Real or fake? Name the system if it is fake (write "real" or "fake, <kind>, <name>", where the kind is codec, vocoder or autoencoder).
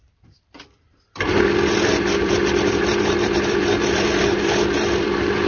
fake, vocoder, BigVGAN v2